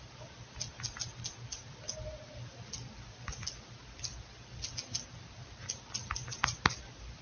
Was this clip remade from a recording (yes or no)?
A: no